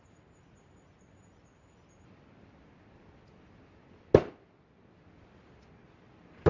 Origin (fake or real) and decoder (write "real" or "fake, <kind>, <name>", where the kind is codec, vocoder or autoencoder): real